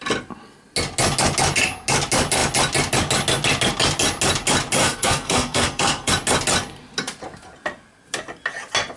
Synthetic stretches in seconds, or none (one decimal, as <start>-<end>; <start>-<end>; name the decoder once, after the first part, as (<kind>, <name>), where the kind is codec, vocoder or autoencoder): 4.8-6.1 (codec, SNAC)